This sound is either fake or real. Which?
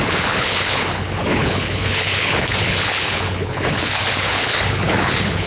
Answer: fake